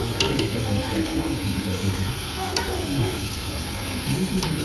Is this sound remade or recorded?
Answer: remade